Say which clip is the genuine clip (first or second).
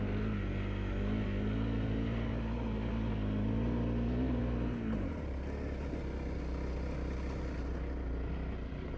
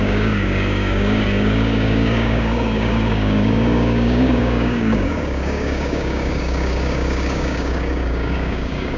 first